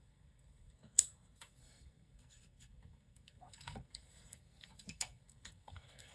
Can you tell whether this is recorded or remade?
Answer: remade